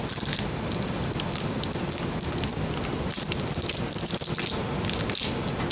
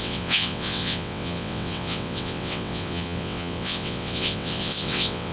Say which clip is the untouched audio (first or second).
first